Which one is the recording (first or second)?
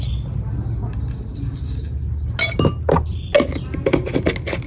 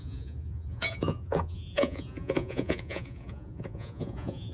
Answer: first